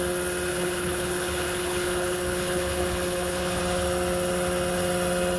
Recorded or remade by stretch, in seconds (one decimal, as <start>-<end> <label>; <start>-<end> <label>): 0.0-0.5 recorded; 0.5-3.6 remade; 3.6-5.4 recorded